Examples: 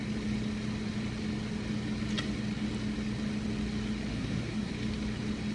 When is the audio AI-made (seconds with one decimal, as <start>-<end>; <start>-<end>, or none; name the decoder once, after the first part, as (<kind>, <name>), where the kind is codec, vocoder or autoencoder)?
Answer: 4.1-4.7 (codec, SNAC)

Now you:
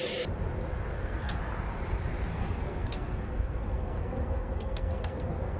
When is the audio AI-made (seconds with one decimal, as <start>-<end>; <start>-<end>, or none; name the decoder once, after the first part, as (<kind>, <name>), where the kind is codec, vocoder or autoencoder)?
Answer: 0.9-1.4 (codec, SNAC); 2.3-5.6

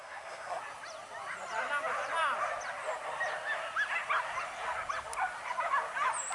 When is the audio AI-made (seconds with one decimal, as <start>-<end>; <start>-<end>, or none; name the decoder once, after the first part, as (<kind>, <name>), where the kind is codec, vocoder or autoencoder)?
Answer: 0.0-0.6 (codec, SNAC)